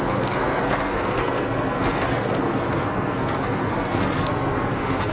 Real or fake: fake